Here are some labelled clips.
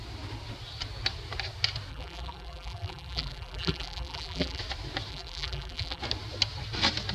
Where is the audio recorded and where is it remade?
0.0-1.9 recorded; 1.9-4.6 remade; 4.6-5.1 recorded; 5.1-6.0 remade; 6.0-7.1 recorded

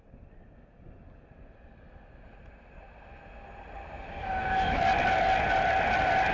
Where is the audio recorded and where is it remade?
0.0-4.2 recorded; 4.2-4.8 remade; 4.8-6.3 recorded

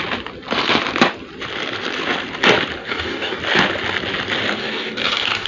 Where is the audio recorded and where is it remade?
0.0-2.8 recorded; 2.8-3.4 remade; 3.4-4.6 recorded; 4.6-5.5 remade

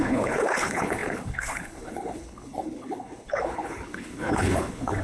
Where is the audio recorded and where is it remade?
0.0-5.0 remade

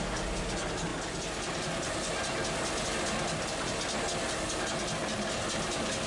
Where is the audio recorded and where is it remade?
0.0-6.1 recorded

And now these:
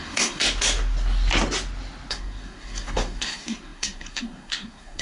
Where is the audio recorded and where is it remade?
0.0-0.4 remade; 0.4-2.1 recorded; 2.1-5.0 remade